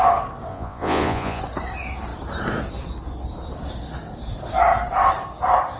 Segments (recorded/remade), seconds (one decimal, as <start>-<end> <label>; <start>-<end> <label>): 0.0-0.5 recorded; 0.5-1.4 remade; 1.4-5.8 recorded